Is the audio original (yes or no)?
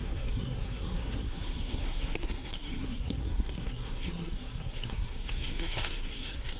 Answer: no